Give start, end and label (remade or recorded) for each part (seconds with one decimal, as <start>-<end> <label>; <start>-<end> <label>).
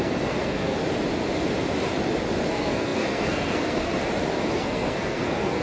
0.0-0.8 remade; 0.8-2.5 recorded; 2.5-3.9 remade; 3.9-4.5 recorded; 4.5-5.6 remade